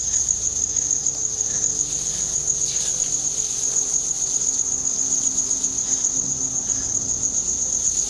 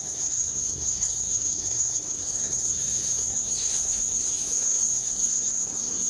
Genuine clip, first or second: first